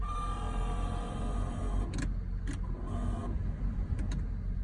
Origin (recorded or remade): recorded